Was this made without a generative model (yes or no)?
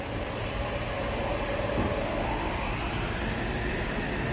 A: yes